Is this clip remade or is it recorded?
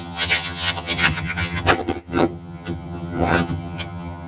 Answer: remade